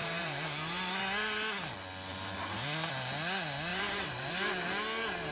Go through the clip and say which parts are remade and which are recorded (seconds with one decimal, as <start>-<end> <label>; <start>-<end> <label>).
0.0-1.0 remade; 1.0-2.1 recorded; 2.1-2.9 remade; 2.9-3.7 recorded; 3.7-4.3 remade; 4.3-5.3 recorded